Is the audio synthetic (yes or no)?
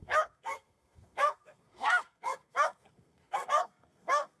yes